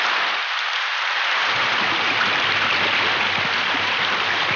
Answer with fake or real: fake